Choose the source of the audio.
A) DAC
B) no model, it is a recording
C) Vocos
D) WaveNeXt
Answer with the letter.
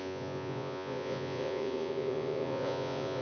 C